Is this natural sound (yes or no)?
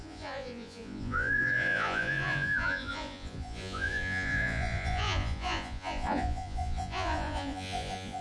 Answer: no